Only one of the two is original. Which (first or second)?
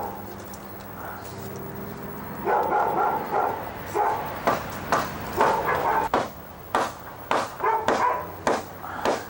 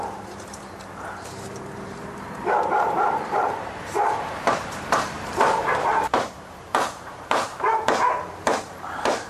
first